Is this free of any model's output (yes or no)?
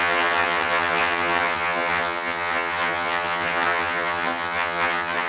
no